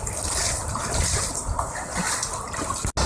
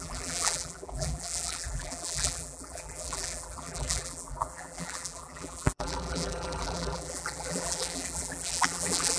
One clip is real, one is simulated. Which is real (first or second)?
first